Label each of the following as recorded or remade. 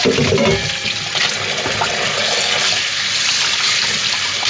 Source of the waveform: recorded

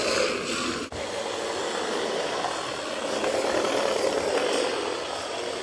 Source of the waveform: recorded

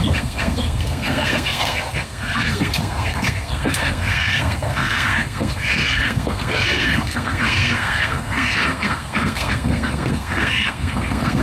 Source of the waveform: remade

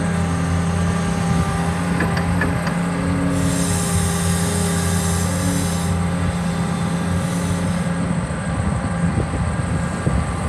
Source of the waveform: recorded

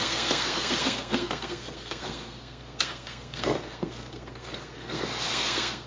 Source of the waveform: remade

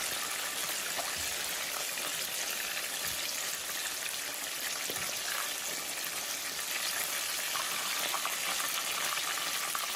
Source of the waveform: recorded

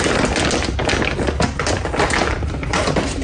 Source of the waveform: recorded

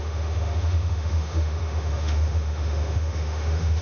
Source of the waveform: remade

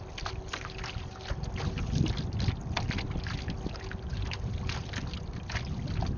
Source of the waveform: recorded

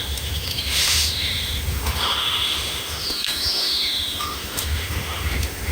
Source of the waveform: remade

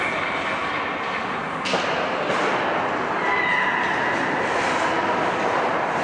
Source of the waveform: recorded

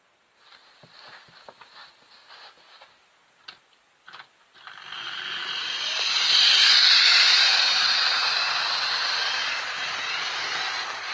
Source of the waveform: recorded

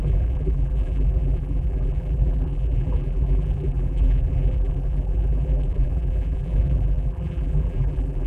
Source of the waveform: remade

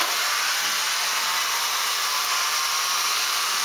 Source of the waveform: recorded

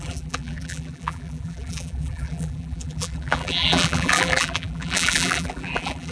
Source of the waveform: remade